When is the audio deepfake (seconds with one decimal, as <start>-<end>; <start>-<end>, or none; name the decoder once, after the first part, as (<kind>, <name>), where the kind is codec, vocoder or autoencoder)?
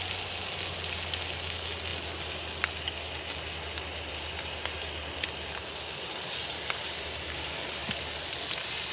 none